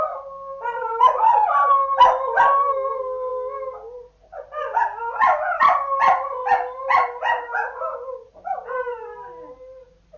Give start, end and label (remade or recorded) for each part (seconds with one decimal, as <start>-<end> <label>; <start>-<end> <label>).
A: 0.0-10.2 recorded